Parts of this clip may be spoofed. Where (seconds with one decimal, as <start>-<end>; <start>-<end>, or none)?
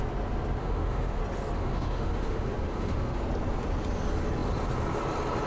0.6-1.2; 1.6-3.2